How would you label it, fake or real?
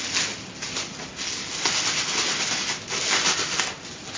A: real